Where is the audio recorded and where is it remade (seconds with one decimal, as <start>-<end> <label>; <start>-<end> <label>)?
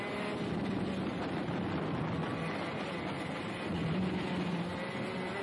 0.0-1.1 recorded; 1.1-4.3 remade; 4.3-5.4 recorded